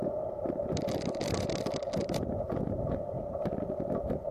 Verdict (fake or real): real